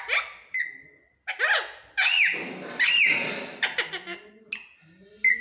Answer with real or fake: real